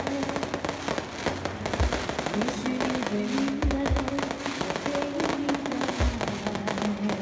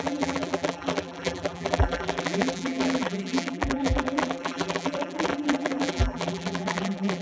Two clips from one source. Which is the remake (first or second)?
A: second